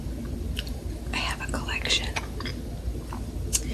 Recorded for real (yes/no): no